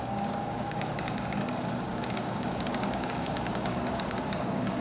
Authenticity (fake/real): fake